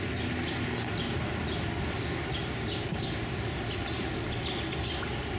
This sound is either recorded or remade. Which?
recorded